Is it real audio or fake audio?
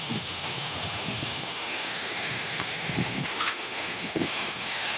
fake